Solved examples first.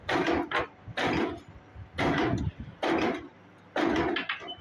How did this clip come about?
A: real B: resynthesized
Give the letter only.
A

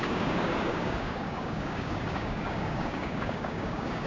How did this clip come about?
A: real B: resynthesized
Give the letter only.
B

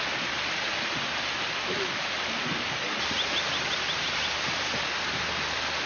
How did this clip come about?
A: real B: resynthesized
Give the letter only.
A